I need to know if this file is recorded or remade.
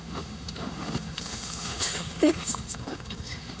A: remade